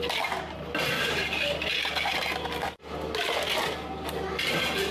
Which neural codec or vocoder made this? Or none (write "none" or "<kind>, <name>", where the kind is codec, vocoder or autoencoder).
none